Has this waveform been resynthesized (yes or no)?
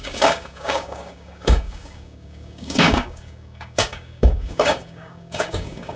yes